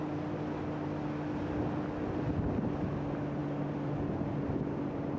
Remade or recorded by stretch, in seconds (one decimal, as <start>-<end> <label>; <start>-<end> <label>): 0.0-5.2 recorded